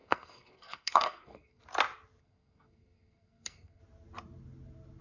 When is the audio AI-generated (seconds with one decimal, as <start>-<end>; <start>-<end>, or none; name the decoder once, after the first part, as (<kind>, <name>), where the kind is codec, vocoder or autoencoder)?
0.0-1.6 (codec, SNAC); 2.2-3.8